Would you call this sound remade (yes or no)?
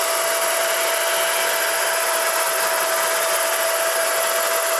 no